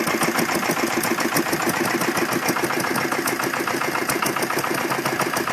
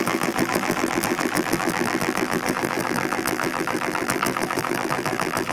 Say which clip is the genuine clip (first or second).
first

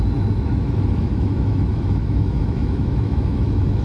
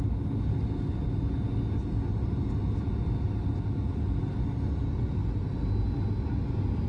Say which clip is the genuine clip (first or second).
second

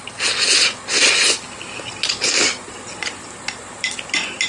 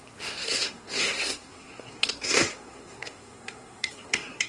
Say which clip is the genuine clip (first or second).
first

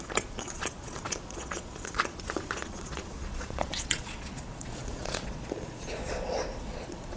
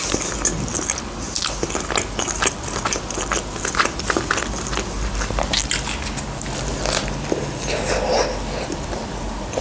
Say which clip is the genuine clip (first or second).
second